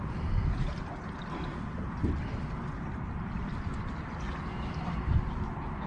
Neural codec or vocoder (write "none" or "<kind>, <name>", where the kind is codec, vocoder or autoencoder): none